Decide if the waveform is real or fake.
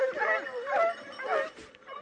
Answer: real